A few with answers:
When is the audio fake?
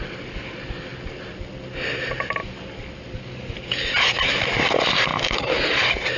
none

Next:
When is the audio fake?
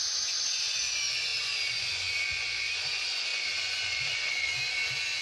0.0-5.2 (vocoder, Vocos)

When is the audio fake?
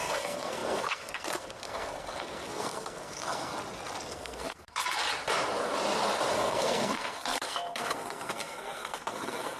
0.0-3.5 (codec, SNAC); 4.1-5.0; 6.3-9.6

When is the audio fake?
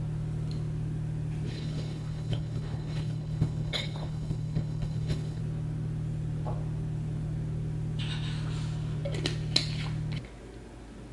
1.5-5.4 (codec, HILCodec)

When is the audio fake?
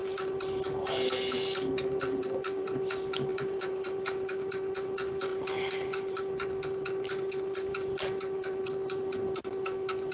3.3-4.0 (vocoder, BigVGAN v2)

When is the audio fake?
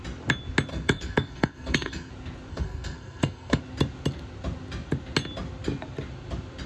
0.7-2.1 (codec, SNAC); 2.5-3.6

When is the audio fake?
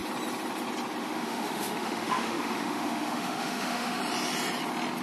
1.0-4.0 (autoencoder, DAC-VAE)